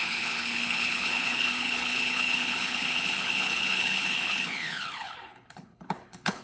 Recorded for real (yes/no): no